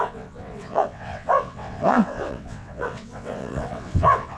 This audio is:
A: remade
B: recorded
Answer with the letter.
A